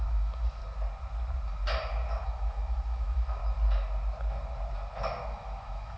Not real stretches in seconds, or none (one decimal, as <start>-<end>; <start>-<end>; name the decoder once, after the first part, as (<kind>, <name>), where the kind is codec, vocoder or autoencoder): 0.0-0.6 (autoencoder, DAC-VAE); 2.2-3.4; 5.2-6.0